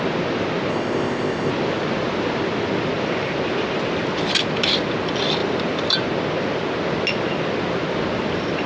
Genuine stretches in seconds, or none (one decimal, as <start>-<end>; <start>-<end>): 0.0-0.7; 1.5-8.7